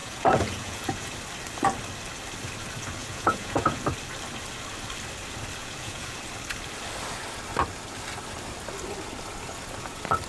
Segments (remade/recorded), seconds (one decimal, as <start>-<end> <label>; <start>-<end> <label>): 0.0-1.1 remade; 1.1-3.0 recorded; 3.0-3.8 remade; 3.8-5.6 recorded; 5.6-6.1 remade; 6.1-10.3 recorded